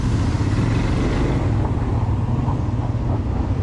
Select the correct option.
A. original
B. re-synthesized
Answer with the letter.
A